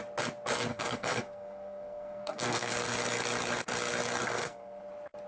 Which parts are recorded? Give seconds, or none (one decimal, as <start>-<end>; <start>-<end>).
0.0-0.7; 2.7-4.2; 4.8-5.3